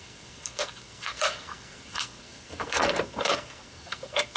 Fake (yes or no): yes